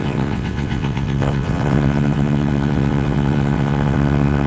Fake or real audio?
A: fake